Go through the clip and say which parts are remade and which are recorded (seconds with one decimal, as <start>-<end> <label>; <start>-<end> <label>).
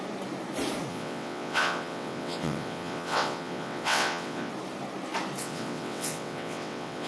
0.0-0.9 recorded; 0.9-4.5 remade; 4.5-5.4 recorded; 5.4-7.1 remade